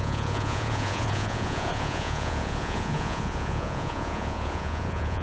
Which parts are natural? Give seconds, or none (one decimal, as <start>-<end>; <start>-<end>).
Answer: none